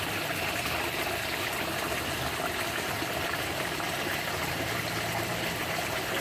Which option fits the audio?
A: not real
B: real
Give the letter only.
B